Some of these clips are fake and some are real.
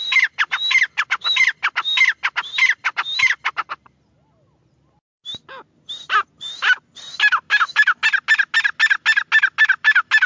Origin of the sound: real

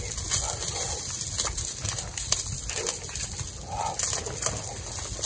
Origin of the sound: real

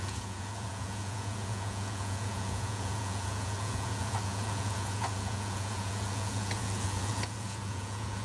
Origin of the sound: fake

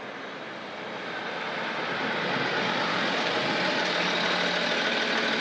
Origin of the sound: real